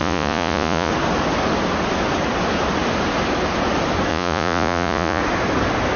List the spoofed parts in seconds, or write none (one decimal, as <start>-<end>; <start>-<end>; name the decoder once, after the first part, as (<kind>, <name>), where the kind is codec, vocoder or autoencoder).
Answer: 0.0-0.9 (vocoder, Vocos); 4.1-5.2